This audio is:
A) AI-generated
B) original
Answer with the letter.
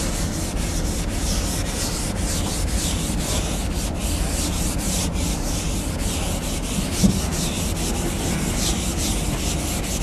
B